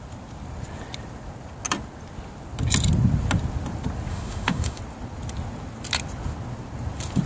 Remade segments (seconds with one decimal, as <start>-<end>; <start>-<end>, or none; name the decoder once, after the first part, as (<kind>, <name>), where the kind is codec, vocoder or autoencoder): 4.1-4.8 (autoencoder, DAC-VAE)

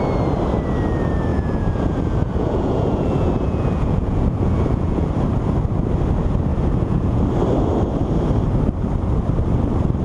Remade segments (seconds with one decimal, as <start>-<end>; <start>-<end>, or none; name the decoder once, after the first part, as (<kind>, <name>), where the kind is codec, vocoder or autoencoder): 1.3-5.1 (vocoder, Vocos); 6.5-7.2

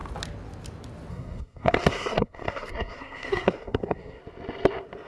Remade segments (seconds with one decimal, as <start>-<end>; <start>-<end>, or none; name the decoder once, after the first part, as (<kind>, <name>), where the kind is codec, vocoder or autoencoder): 1.1-4.2 (codec, SNAC)

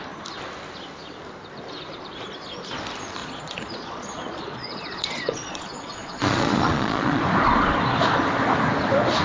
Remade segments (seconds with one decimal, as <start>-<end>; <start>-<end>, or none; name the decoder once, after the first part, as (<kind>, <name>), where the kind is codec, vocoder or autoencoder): 3.2-7.2 (vocoder, Vocos)

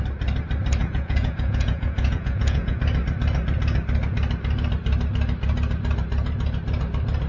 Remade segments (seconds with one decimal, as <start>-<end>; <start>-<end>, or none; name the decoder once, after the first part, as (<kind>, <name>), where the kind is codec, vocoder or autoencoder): 0.8-2.8 (vocoder, Vocos)